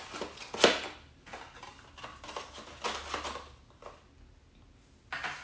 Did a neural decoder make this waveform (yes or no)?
no